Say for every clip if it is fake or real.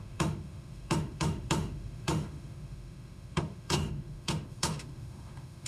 fake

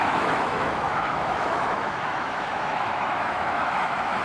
fake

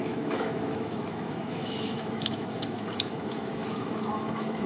fake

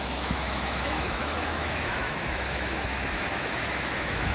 fake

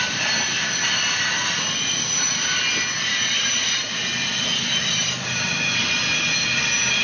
real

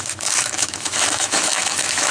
fake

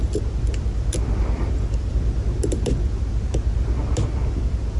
real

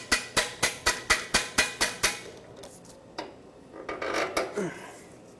real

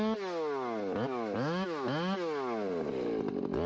real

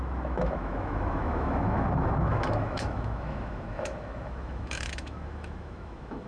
fake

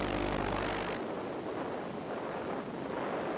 real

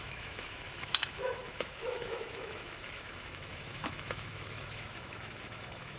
fake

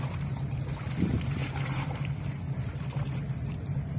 real